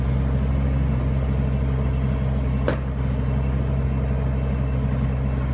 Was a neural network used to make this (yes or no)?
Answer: no